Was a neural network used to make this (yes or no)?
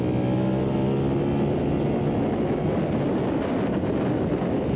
no